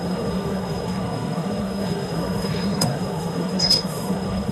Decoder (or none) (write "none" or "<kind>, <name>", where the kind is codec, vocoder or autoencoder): codec, SNAC